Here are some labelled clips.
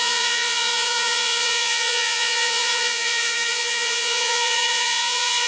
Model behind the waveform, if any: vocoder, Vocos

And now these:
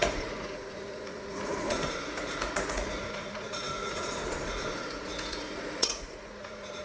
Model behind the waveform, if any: vocoder, Vocos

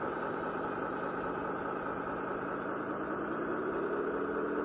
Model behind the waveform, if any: none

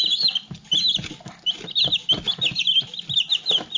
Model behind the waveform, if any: none